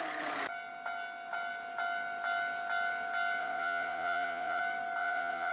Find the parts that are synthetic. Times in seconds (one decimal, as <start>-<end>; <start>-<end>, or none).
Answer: 3.4-4.6; 5.0-5.5